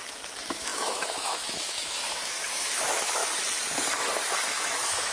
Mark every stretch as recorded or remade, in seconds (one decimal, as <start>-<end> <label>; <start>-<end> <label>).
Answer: 0.0-3.2 remade; 3.2-4.4 recorded; 4.4-5.1 remade